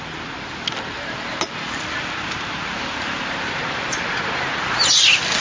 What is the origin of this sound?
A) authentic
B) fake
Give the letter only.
A